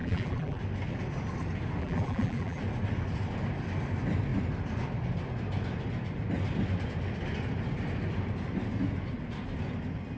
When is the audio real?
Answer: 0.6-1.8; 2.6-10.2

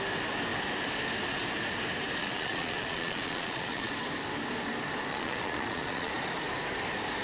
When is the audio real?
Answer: 0.0-2.2; 3.9-5.1; 6.1-7.2

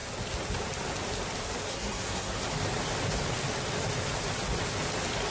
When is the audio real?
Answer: 0.0-1.7; 2.4-5.3

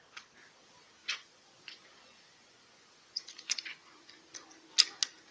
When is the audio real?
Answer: 0.0-1.0; 4.2-5.3